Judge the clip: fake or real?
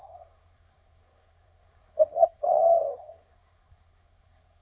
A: fake